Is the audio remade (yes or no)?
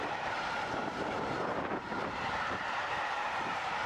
yes